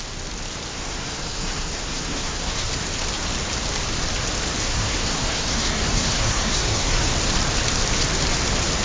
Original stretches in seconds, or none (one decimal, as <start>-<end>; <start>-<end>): 0.0-0.7; 2.7-4.6; 7.1-8.8